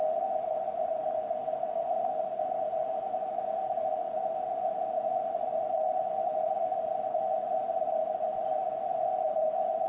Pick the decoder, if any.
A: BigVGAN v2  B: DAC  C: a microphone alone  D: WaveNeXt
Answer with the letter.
C